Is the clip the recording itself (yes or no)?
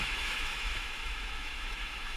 no